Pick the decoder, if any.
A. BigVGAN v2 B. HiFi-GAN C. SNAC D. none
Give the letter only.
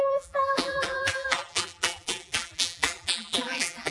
A